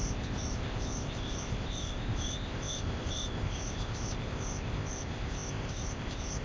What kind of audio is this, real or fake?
fake